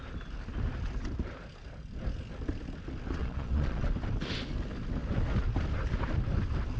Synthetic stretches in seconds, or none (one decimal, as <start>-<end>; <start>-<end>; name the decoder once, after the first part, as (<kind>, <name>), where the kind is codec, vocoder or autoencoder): 3.2-3.8 (vocoder, Vocos)